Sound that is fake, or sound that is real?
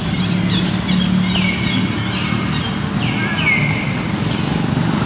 real